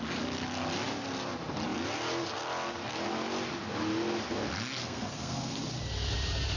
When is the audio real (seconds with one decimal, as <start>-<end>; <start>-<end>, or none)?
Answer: 0.0-4.8; 5.5-6.6